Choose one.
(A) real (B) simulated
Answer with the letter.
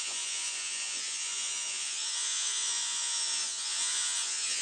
B